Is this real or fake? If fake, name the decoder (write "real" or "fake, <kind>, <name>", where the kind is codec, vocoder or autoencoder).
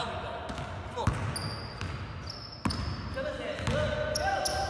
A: real